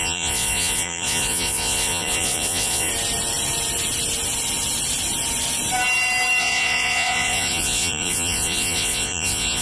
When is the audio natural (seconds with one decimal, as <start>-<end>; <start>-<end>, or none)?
2.9-6.4